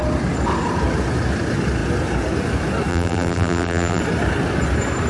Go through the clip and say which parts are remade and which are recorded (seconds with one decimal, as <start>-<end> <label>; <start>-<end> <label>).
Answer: 0.0-2.9 recorded; 2.9-4.0 remade; 4.0-5.1 recorded